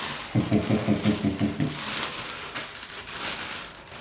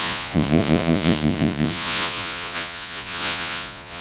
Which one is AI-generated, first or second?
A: second